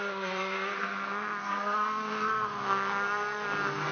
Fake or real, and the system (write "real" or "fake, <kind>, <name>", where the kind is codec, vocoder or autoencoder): fake, codec, SNAC